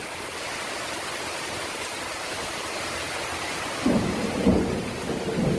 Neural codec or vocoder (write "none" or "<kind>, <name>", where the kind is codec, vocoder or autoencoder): vocoder, BigVGAN v2